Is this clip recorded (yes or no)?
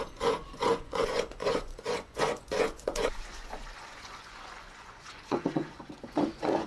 no